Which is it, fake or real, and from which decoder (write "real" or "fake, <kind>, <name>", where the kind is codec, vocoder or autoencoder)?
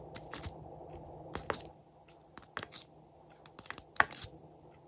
real